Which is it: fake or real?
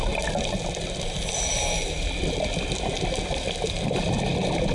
real